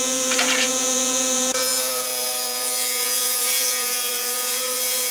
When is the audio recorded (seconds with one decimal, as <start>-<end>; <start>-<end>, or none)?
none